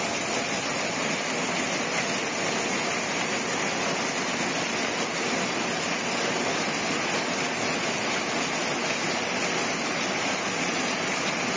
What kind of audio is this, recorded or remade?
recorded